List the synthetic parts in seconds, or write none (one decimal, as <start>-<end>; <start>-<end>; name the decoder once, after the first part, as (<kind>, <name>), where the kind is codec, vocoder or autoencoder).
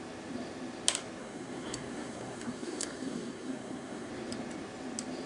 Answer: 1.2-4.1 (codec, SNAC)